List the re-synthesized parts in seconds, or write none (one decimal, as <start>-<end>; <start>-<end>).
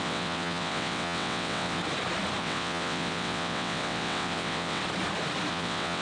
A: 0.0-1.8; 2.4-4.8; 5.5-6.0